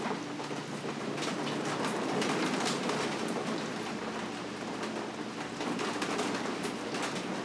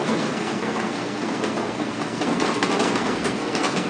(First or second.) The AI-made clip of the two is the second